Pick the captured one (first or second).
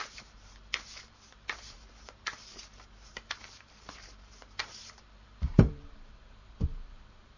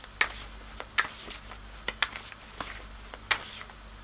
second